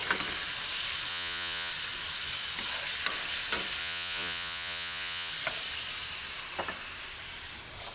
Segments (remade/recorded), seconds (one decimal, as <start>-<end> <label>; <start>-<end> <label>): 0.0-1.1 recorded; 1.1-1.7 remade; 1.7-3.8 recorded; 3.8-5.3 remade; 5.3-7.9 recorded